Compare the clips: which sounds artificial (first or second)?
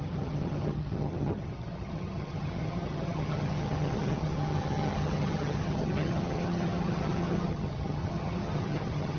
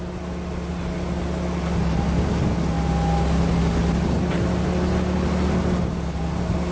first